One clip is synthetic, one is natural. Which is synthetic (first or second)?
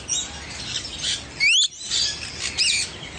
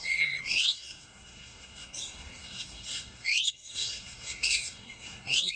second